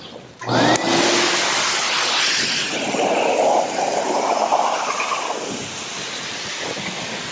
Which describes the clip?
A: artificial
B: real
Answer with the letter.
B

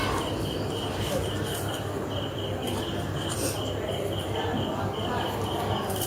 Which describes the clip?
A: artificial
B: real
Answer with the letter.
B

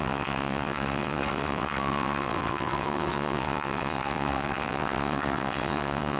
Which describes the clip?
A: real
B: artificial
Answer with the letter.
B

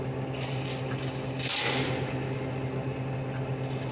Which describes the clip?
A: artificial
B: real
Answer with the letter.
B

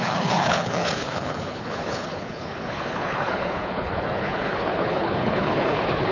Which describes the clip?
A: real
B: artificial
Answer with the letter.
B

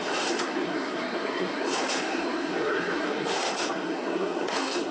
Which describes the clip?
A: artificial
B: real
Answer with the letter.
A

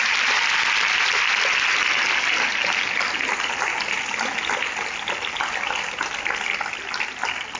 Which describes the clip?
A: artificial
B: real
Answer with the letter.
B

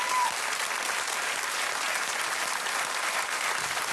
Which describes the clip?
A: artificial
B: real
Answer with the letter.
B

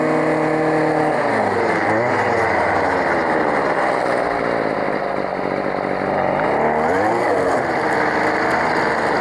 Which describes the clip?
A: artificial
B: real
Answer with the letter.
B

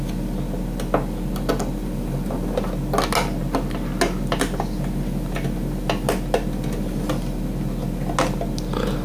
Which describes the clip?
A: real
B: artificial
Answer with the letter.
A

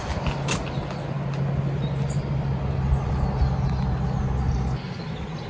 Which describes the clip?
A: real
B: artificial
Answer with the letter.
A